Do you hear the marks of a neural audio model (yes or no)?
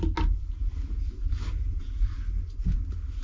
no